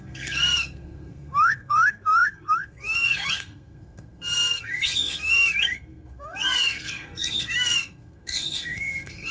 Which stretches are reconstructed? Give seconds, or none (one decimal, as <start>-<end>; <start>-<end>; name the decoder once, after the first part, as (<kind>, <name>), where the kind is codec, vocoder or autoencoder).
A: 0.0-9.3 (codec, SNAC)